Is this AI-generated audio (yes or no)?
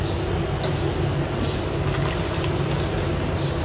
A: no